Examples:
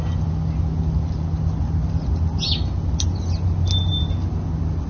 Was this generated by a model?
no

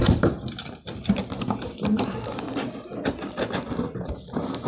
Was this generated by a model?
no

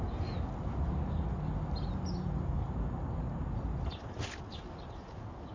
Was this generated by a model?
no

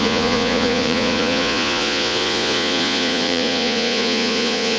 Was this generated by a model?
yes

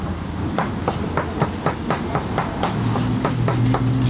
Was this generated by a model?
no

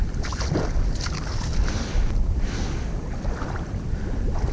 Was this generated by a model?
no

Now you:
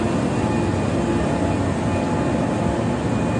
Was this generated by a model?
no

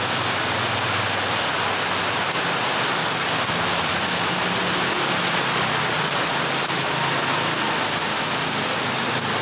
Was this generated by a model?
no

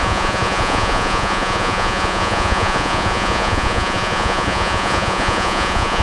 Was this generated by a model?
yes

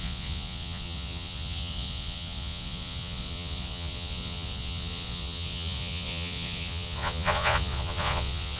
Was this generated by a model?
yes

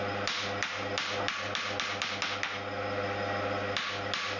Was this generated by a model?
no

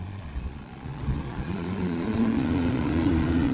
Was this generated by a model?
yes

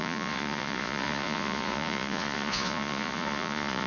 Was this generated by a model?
yes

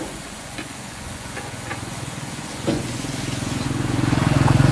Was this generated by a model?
yes